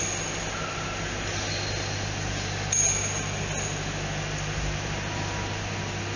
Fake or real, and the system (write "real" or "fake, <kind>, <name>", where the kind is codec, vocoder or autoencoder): real